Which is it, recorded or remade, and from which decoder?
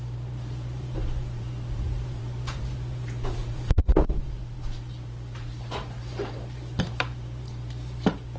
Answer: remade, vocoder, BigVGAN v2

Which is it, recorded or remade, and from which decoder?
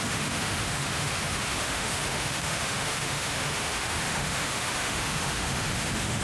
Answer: remade, autoencoder, DAC-VAE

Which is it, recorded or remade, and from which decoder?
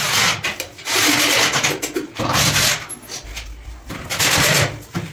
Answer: recorded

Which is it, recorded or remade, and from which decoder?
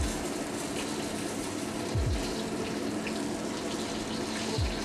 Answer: recorded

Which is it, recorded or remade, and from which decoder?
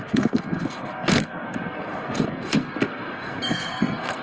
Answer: remade, codec, SNAC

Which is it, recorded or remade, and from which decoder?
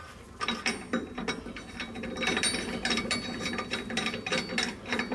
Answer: recorded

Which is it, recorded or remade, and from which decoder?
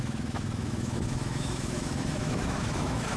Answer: remade, autoencoder, DAC-VAE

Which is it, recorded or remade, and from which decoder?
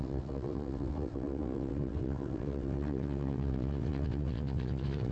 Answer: remade, vocoder, WaveNeXt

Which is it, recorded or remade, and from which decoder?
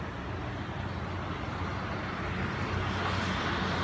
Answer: recorded